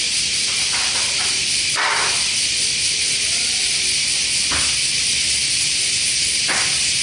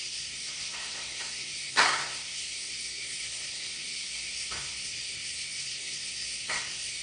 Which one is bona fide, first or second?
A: first